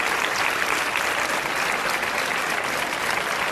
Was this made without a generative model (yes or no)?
yes